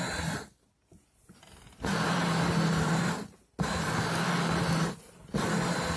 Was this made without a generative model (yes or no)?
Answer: yes